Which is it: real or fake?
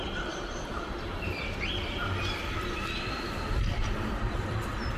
fake